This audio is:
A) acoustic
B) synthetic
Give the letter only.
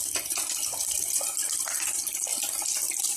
B